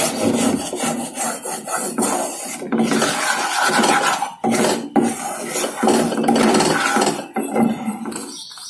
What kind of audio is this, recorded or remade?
recorded